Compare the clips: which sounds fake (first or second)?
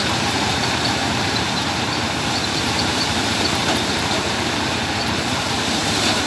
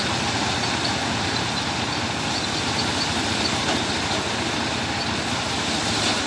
first